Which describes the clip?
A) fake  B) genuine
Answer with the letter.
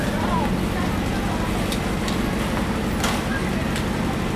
B